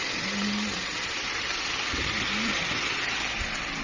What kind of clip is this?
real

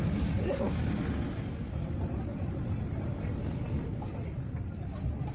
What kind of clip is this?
real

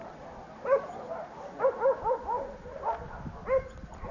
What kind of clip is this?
real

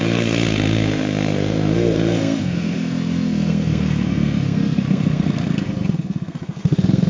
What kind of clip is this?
fake